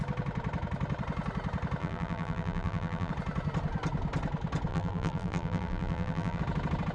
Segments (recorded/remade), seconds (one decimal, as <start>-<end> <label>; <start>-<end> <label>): 0.0-1.8 recorded; 1.8-3.1 remade; 3.1-4.7 recorded; 4.7-6.4 remade; 6.4-6.9 recorded

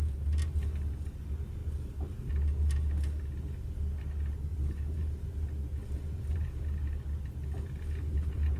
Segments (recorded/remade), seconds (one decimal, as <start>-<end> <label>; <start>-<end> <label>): 0.0-4.5 recorded; 4.5-5.3 remade; 5.3-5.8 recorded; 5.8-6.6 remade; 6.6-8.6 recorded

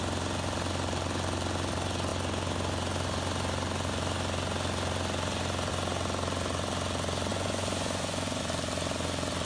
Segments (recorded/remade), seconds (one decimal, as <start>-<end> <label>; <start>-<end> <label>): 0.0-7.3 recorded; 7.3-8.4 remade; 8.4-9.5 recorded